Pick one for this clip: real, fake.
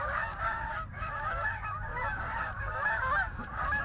fake